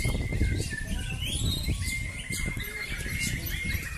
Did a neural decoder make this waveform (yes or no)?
no